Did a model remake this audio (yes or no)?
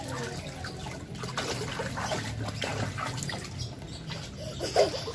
no